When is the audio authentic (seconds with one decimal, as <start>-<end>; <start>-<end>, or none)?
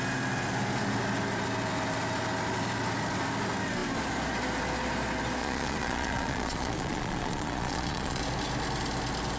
0.0-5.4; 8.2-9.4